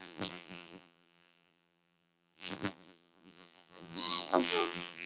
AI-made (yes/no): yes